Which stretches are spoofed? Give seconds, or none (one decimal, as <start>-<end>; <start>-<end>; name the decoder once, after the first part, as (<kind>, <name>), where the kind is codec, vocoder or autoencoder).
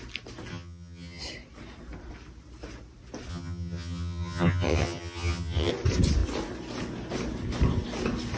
0.5-1.2 (vocoder, HiFi-GAN); 3.3-5.7